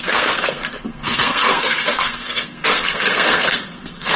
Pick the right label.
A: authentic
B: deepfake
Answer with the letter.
B